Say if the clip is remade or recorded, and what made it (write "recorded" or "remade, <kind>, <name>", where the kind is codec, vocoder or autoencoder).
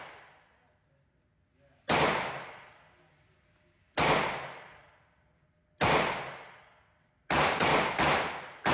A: recorded